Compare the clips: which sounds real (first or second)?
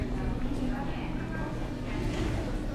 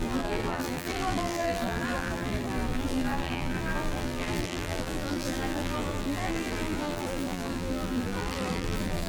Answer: first